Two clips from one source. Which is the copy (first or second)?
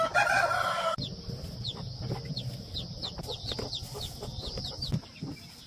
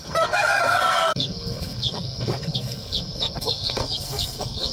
second